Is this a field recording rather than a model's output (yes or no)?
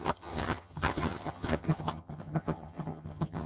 no